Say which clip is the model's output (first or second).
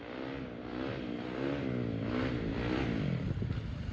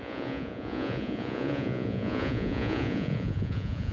second